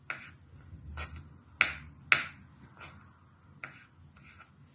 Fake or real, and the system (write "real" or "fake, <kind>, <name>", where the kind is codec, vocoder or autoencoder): real